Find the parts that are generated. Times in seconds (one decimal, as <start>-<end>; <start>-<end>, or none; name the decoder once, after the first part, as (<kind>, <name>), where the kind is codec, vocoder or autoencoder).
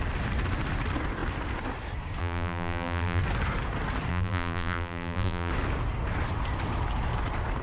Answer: 2.2-3.2 (vocoder, BigVGAN v2); 4.1-5.5